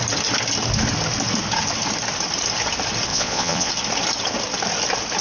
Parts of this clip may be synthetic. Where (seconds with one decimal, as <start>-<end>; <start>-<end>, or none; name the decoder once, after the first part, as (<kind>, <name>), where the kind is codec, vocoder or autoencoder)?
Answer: 3.1-3.7 (vocoder, Vocos)